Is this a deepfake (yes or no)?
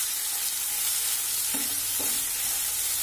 no